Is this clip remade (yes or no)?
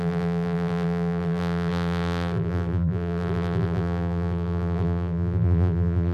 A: yes